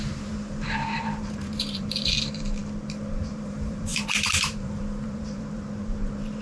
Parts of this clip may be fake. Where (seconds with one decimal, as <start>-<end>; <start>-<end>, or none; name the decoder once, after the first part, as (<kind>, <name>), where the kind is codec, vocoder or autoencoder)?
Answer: 0.0-2.6 (vocoder, BigVGAN v2); 3.2-6.4